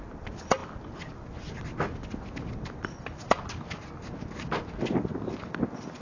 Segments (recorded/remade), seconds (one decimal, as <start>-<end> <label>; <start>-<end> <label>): 0.0-6.0 recorded